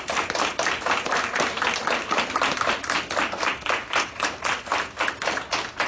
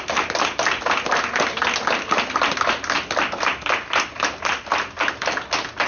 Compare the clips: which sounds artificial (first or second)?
first